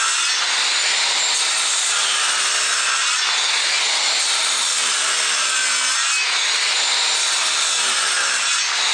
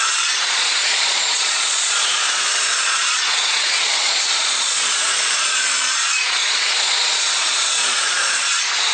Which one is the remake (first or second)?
second